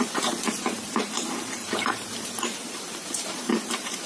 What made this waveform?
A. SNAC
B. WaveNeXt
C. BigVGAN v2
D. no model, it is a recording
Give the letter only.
C